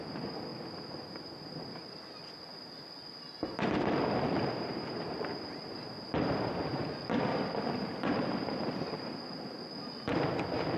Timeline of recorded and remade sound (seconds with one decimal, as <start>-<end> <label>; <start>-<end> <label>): 0.0-10.8 recorded